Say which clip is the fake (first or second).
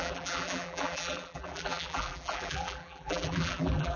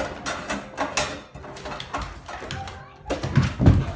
first